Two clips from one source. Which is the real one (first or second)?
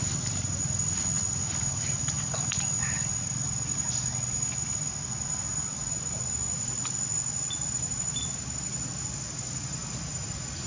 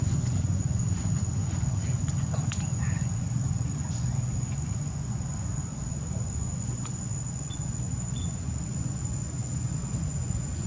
first